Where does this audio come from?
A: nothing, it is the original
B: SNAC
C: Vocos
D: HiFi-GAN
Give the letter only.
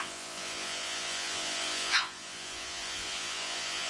C